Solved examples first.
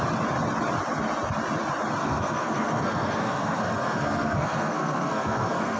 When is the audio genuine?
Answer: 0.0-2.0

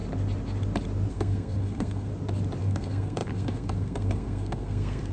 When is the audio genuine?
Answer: 0.0-1.1; 2.1-2.6